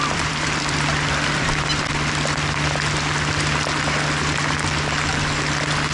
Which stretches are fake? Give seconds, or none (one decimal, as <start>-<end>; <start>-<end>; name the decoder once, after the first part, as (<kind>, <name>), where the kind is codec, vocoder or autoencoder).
0.0-1.7 (vocoder, BigVGAN v2)